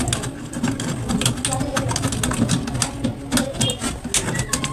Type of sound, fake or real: real